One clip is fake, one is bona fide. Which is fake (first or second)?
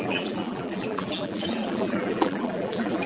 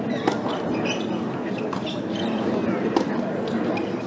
first